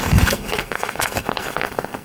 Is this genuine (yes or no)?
no